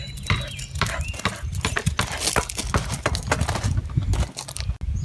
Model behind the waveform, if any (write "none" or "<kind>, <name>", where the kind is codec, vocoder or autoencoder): none